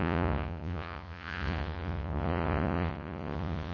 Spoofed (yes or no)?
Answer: yes